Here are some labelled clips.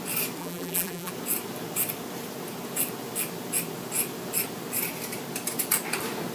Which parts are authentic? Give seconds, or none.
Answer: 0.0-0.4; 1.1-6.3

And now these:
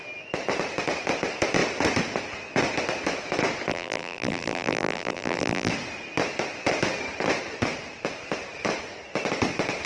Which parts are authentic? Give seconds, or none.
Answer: 0.0-3.7; 5.7-9.9